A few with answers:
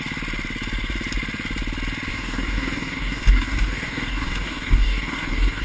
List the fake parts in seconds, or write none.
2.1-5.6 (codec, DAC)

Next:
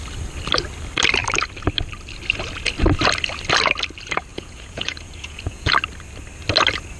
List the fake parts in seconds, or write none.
4.3-5.7 (vocoder, Vocos)